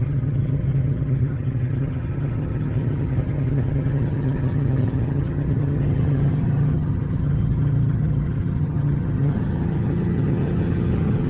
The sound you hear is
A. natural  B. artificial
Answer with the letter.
B